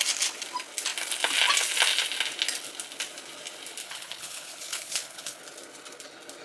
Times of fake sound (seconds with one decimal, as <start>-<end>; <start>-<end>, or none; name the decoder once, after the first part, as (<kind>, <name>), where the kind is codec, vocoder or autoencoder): 3.8-5.4 (codec, HILCodec)